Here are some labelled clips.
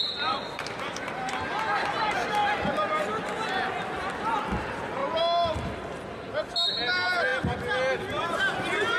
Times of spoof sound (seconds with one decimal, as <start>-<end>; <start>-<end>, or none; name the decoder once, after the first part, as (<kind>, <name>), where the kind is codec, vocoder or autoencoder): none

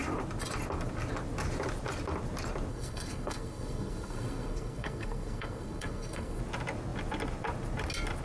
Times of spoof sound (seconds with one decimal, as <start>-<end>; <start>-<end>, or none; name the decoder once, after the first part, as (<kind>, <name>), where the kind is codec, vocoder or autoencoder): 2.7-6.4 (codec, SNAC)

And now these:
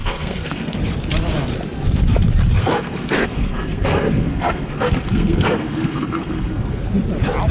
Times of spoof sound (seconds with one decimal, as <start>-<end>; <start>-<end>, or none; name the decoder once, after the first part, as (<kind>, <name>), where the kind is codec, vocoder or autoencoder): 0.0-0.8 (codec, SNAC); 2.6-6.8

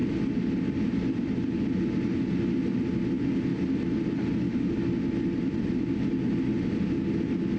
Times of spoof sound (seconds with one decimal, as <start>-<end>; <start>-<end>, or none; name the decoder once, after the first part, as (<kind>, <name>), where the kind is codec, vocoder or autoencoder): none

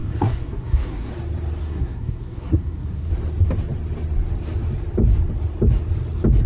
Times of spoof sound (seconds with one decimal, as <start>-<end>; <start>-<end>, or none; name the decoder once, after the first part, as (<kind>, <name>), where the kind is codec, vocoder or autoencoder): 0.0-1.1 (codec, SNAC); 1.6-3.1

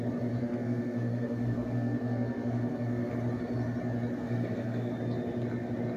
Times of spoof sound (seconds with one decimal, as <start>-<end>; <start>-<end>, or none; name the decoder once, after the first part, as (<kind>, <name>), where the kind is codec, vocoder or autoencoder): 0.4-3.1 (codec, SNAC); 4.2-4.9

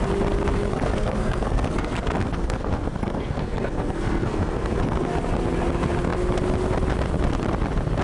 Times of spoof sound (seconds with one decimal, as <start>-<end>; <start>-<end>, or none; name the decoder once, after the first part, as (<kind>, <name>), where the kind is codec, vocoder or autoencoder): 0.7-5.1 (codec, SNAC)